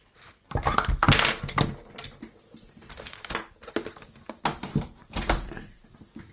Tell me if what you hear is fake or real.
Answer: real